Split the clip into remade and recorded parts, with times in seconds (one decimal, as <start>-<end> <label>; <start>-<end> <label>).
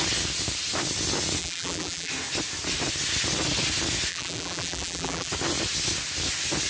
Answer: 0.0-1.4 recorded; 1.4-2.1 remade; 2.1-4.1 recorded; 4.1-5.3 remade; 5.3-6.7 recorded